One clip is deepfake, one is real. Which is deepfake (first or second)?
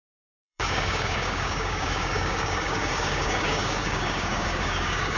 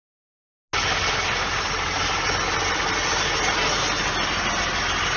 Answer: first